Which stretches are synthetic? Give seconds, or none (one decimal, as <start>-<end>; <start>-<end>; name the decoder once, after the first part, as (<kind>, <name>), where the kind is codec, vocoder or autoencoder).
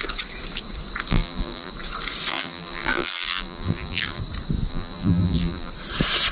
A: 1.1-1.7 (vocoder, BigVGAN v2); 2.3-4.2; 4.7-5.7